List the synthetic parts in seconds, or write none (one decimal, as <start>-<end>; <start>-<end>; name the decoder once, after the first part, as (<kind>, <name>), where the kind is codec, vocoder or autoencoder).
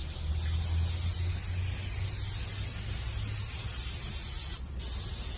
none